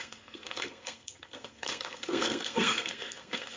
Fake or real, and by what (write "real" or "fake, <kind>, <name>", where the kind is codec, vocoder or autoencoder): fake, codec, SNAC